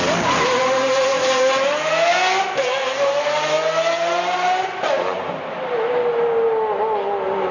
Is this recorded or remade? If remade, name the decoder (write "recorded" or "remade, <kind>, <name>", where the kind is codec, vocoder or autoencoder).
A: recorded